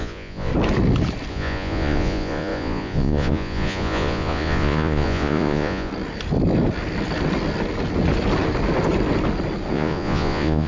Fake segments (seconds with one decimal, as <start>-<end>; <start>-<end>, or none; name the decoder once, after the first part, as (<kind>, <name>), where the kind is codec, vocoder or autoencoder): 0.0-0.5 (vocoder, Vocos); 1.3-5.9; 9.7-10.7